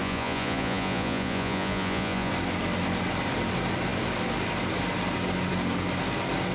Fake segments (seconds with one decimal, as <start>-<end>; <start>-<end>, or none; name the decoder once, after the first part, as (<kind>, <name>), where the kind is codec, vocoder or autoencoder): 0.0-2.3 (vocoder, Vocos)